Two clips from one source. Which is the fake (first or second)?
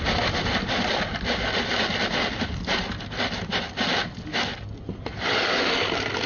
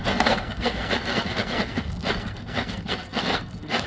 second